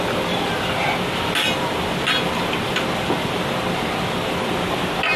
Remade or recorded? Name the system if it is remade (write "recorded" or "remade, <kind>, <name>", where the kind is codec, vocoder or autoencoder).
recorded